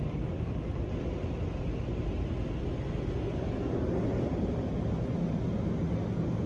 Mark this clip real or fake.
real